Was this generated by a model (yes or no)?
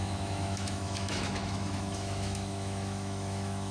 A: yes